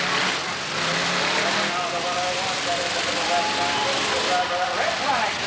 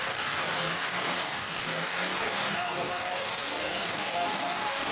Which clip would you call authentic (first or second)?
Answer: first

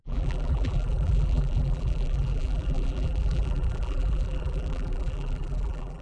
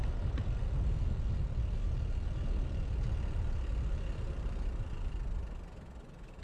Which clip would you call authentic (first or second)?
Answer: second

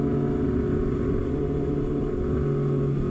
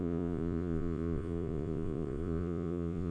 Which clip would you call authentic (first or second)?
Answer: first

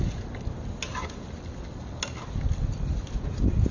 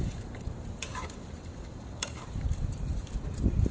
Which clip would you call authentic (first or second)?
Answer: first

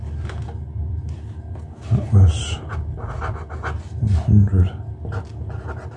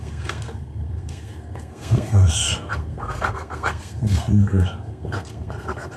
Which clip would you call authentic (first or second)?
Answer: first